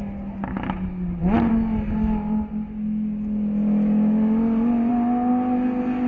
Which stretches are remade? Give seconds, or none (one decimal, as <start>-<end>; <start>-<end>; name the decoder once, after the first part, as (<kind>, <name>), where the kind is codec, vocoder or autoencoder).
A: none